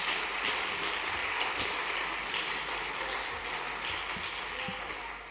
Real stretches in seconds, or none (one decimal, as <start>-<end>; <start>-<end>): 0.0-5.3

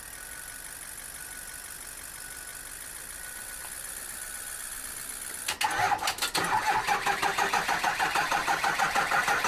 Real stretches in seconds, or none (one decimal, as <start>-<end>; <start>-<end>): 0.0-9.5